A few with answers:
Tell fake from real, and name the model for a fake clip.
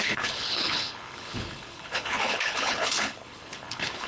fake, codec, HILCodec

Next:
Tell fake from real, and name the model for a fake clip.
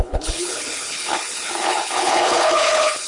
fake, codec, HILCodec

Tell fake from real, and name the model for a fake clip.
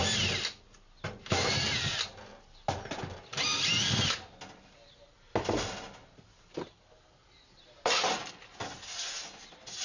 real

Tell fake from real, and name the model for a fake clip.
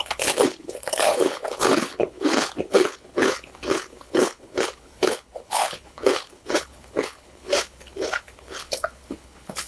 fake, codec, HILCodec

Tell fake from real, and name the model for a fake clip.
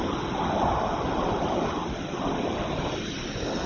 real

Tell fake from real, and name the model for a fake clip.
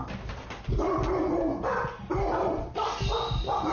real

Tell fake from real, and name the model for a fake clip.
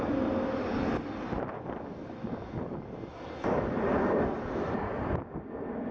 real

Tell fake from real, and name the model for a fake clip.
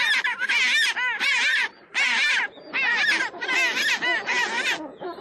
real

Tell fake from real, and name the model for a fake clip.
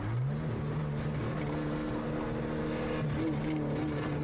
real